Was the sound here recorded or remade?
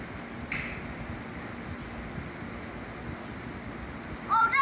recorded